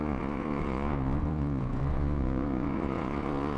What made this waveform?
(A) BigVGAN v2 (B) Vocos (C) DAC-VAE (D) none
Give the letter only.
B